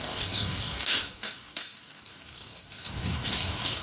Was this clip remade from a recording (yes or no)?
yes